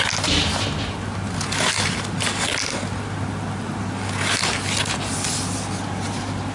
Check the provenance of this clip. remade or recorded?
recorded